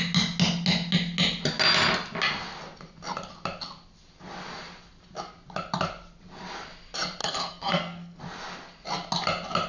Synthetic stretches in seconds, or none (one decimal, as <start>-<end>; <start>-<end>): 7.2-8.2